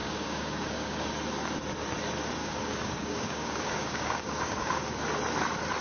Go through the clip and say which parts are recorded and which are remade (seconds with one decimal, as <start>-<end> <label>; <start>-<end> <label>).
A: 0.0-1.1 remade; 1.1-2.4 recorded; 2.4-5.0 remade; 5.0-5.8 recorded